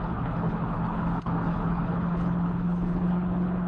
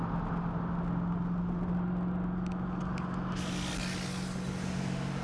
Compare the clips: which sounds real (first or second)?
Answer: second